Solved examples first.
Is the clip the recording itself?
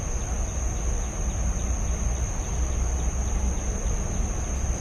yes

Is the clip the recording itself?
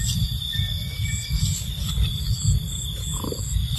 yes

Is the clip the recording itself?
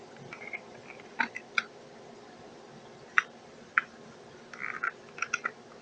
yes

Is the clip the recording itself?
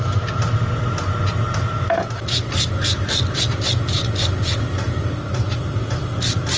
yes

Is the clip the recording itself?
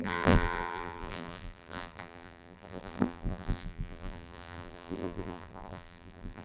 no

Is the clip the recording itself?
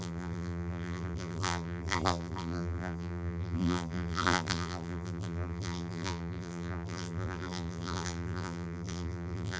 no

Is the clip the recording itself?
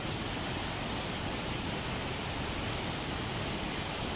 yes